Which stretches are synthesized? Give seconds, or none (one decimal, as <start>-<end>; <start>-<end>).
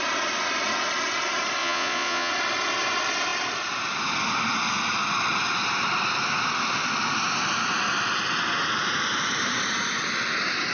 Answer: 1.6-2.3